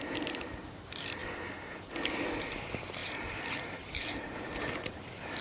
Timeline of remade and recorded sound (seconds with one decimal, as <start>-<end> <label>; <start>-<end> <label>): 0.0-1.2 remade; 1.2-2.4 recorded; 2.4-5.4 remade

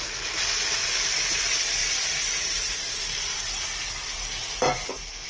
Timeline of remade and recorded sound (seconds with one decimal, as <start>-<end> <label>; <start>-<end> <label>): 0.0-1.8 recorded; 1.8-3.6 remade; 3.6-5.3 recorded

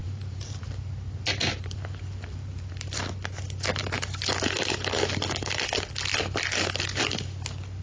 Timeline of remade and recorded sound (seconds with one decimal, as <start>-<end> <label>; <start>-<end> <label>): 0.0-0.6 remade; 0.6-1.3 recorded; 1.3-2.7 remade; 2.7-7.8 recorded

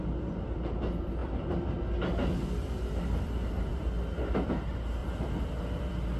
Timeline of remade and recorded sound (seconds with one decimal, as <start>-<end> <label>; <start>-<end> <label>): 0.0-1.2 recorded; 1.2-1.8 remade; 1.8-5.0 recorded; 5.0-6.2 remade